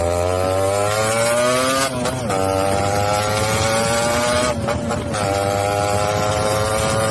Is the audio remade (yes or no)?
no